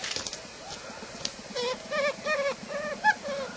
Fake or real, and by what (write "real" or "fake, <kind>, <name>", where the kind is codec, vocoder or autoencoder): real